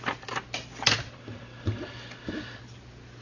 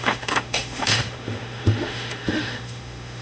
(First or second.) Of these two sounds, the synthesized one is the second